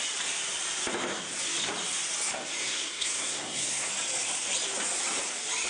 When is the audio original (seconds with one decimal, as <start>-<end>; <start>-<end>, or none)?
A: 0.0-2.6; 3.9-5.7